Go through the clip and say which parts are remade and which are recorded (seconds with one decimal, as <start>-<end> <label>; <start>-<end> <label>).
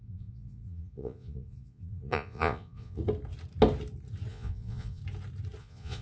0.0-3.0 remade; 3.0-4.3 recorded; 4.3-5.0 remade; 5.0-5.6 recorded; 5.6-6.0 remade